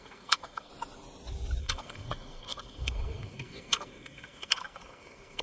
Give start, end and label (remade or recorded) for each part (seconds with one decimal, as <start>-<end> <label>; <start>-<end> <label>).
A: 0.0-0.7 remade; 0.7-1.6 recorded; 1.6-5.4 remade